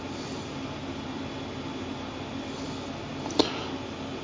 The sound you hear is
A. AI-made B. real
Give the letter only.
B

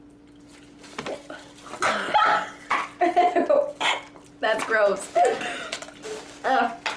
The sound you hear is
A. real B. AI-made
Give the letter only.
A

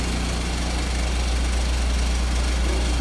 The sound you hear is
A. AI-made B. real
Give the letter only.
B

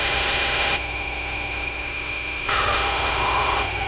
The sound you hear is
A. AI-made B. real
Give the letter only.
A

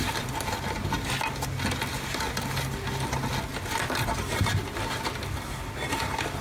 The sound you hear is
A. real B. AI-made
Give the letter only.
A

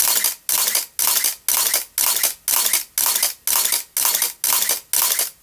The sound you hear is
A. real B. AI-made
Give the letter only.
A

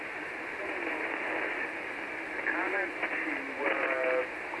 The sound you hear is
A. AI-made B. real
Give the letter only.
B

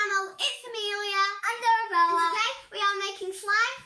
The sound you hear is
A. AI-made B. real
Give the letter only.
A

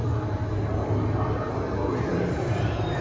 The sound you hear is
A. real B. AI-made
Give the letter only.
A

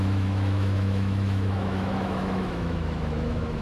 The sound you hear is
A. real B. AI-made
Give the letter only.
B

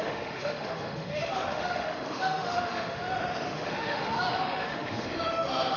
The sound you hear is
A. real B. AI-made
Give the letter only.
B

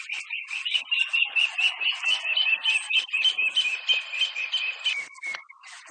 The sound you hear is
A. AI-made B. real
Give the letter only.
B